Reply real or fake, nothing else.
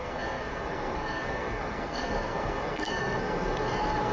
fake